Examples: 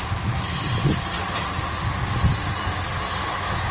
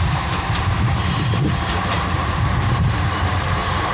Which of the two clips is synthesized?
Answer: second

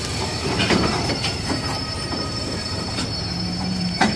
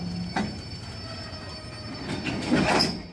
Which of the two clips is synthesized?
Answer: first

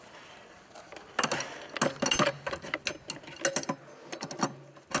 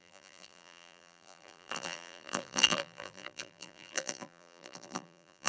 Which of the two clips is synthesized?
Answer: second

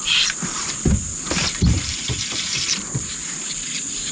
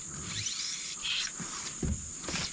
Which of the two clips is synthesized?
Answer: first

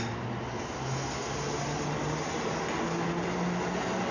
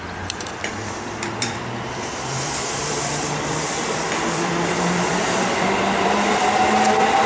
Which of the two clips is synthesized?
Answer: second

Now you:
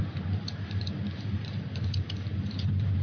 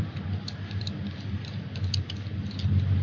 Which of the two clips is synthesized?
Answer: first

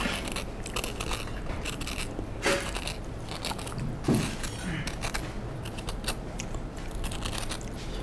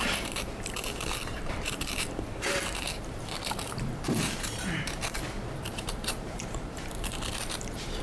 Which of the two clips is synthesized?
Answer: second